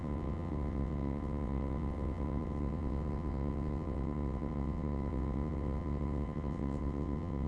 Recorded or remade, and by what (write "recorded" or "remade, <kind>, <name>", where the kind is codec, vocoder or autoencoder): remade, vocoder, WaveNeXt